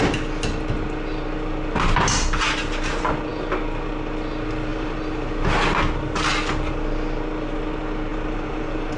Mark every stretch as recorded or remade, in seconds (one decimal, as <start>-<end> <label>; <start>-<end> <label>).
0.0-4.7 recorded; 4.7-5.3 remade; 5.3-8.1 recorded; 8.1-9.0 remade